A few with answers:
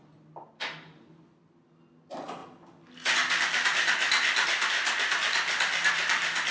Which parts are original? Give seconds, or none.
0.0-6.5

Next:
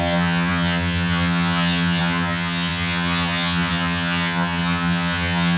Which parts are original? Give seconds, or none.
none

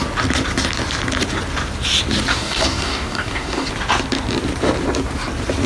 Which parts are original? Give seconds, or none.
0.0-2.3; 3.7-5.7

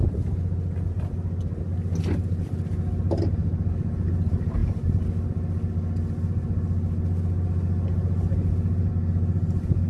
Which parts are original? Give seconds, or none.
0.0-9.9

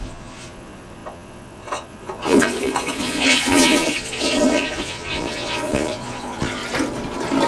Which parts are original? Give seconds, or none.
6.6-7.5

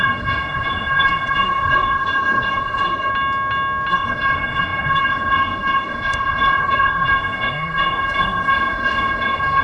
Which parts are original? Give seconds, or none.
3.1-3.9

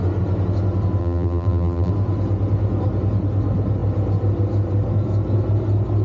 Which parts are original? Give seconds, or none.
0.0-1.0; 1.9-6.0